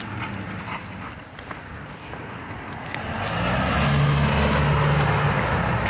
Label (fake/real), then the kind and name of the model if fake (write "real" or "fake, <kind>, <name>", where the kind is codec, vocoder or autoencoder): real